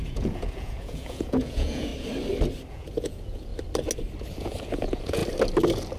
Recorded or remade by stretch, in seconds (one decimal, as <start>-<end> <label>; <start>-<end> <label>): 0.0-1.9 remade; 1.9-2.7 recorded; 2.7-3.5 remade; 3.5-4.4 recorded; 4.4-5.2 remade; 5.2-6.0 recorded